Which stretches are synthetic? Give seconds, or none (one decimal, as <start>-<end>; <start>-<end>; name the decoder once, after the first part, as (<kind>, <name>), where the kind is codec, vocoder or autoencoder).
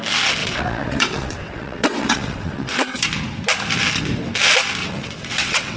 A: 0.4-3.0 (vocoder, WaveNeXt); 4.8-5.8